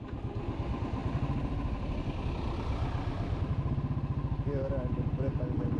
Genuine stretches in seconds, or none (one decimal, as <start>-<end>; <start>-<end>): 0.0-5.8